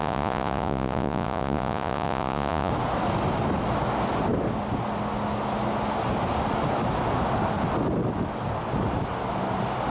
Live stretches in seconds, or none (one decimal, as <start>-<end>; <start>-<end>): 2.7-9.9